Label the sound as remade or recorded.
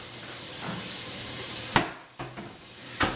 recorded